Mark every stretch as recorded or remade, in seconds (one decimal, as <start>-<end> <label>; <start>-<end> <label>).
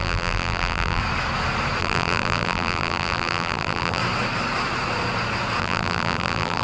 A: 0.0-1.0 remade; 1.0-1.8 recorded; 1.8-4.0 remade; 4.0-5.6 recorded; 5.6-6.6 remade